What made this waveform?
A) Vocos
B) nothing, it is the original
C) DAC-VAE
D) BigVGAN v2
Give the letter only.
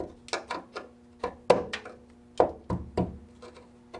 B